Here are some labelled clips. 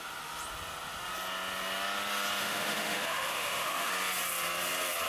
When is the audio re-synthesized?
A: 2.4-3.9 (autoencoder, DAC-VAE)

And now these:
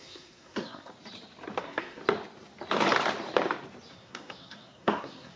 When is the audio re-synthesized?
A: 0.0-0.9 (codec, SNAC); 1.6-2.0; 3.9-5.4

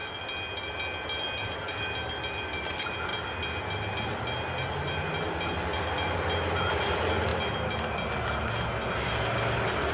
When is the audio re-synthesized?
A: none